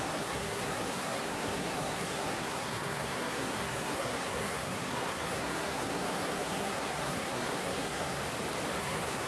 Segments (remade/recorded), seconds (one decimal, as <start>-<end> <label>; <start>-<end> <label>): 0.0-8.2 remade; 8.2-8.8 recorded; 8.8-9.3 remade